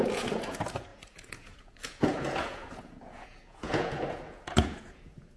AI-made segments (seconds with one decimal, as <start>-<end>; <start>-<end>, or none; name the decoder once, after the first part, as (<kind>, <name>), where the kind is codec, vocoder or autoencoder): 0.0-5.4 (vocoder, Vocos)